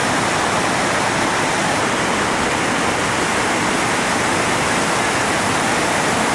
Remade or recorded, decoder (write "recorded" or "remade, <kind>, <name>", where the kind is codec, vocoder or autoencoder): recorded